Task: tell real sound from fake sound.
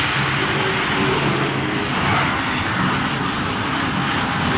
real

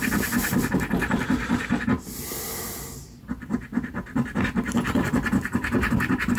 fake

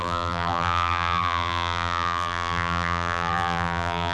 fake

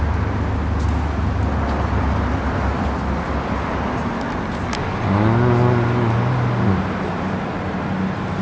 real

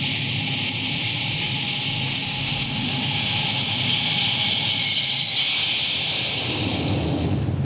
real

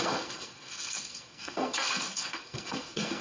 fake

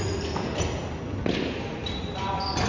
real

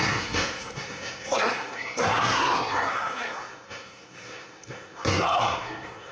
fake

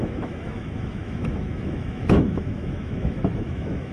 fake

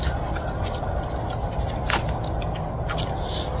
real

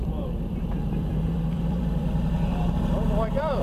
fake